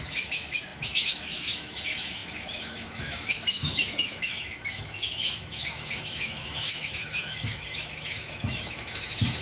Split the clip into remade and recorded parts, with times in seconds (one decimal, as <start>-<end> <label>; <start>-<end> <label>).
0.0-9.4 remade